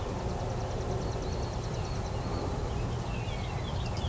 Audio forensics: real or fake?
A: real